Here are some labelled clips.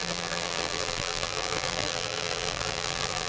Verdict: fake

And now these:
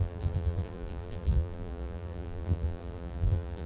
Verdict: fake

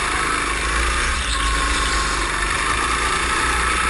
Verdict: real